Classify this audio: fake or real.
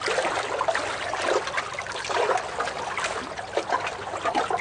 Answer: real